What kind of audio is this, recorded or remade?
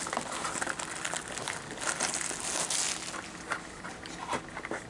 recorded